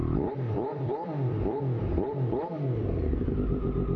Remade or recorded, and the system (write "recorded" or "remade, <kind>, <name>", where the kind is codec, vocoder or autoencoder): remade, vocoder, BigVGAN v2